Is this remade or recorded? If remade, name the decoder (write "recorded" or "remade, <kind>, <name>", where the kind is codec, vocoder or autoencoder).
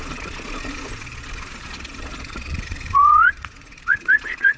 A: remade, vocoder, Vocos